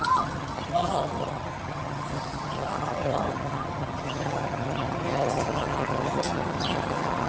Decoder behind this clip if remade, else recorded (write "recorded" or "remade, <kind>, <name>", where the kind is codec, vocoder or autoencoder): remade, vocoder, HiFi-GAN